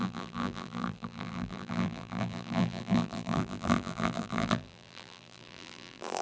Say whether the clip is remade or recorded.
remade